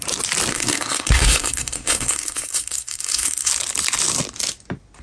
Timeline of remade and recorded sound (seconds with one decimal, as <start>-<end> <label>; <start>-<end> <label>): 0.0-0.5 recorded; 0.5-3.5 remade; 3.5-5.0 recorded